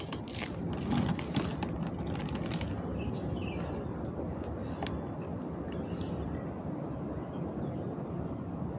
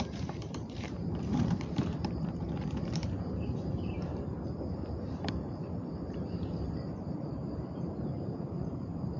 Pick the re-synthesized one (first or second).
second